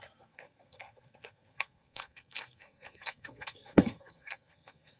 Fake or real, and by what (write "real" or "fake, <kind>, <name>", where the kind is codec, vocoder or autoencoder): fake, codec, SNAC